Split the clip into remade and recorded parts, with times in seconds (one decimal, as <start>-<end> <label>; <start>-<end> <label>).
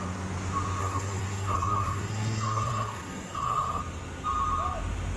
0.0-0.8 recorded; 0.8-3.8 remade; 3.8-5.2 recorded